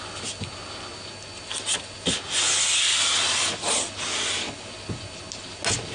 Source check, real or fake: real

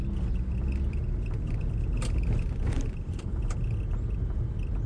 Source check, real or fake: real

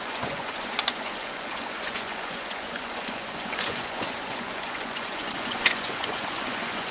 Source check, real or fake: fake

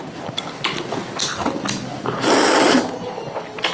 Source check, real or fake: real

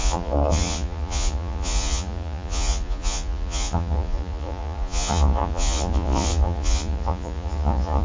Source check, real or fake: fake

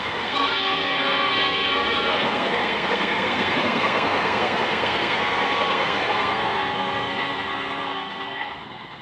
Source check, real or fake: fake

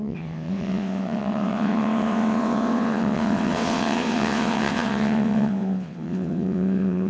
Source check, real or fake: fake